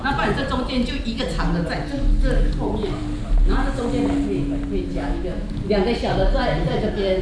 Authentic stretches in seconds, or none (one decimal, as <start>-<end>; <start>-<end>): 0.0-4.9; 5.6-7.2